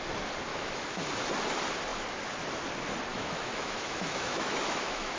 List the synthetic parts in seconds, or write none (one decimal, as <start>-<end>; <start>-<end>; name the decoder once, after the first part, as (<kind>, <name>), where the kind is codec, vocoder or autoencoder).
0.5-1.1 (autoencoder, DAC-VAE); 3.1-5.2